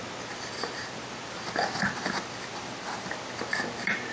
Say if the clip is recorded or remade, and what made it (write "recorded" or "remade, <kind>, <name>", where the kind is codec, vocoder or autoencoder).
recorded